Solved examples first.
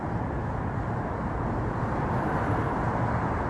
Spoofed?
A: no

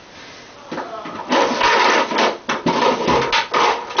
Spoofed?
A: no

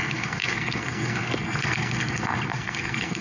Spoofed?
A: yes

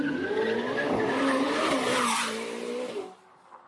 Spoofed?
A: no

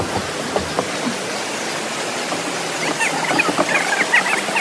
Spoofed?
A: no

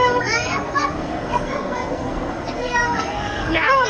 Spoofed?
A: yes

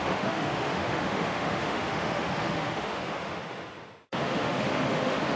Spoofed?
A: yes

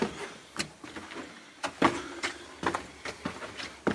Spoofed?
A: no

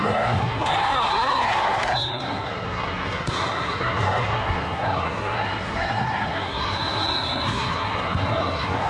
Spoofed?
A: yes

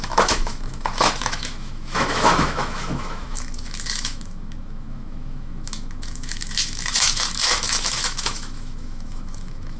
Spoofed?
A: yes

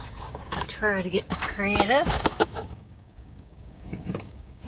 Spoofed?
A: yes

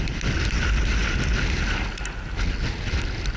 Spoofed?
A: no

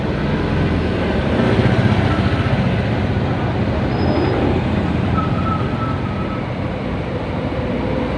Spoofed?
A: no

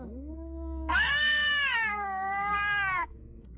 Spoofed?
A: yes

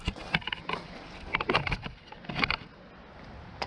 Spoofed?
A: no